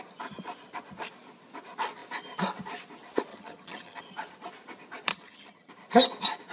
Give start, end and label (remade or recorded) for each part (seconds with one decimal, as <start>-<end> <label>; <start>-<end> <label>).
0.0-3.3 recorded; 3.3-4.0 remade; 4.0-5.1 recorded; 5.1-5.7 remade; 5.7-6.5 recorded